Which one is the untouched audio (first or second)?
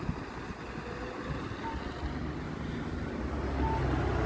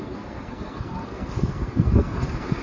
first